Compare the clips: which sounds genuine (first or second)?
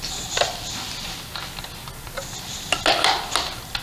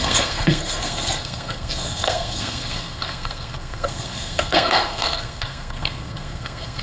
first